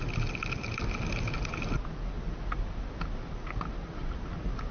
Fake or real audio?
real